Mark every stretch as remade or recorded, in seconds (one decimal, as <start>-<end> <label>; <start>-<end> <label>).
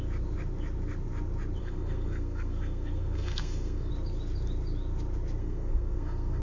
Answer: 0.0-1.6 recorded; 1.6-3.9 remade; 3.9-5.4 recorded; 5.4-6.4 remade